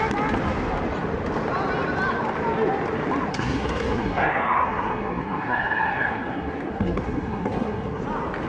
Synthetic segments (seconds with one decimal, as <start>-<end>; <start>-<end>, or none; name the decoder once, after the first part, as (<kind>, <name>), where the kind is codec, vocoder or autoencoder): 3.3-8.0 (codec, SNAC)